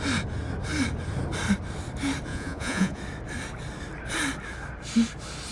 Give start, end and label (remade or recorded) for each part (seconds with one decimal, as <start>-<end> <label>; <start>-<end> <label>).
0.0-2.3 recorded; 2.3-3.0 remade; 3.0-5.5 recorded